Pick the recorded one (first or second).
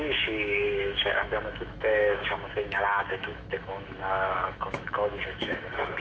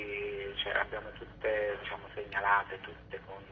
second